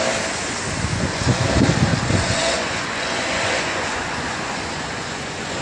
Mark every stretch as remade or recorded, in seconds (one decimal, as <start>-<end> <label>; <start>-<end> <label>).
0.0-0.9 recorded; 0.9-1.5 remade; 1.5-1.9 recorded; 1.9-5.6 remade